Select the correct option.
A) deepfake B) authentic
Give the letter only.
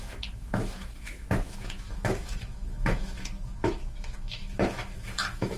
A